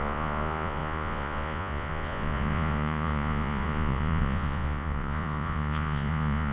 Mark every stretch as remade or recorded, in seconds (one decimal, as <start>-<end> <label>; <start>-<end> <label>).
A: 0.0-6.5 remade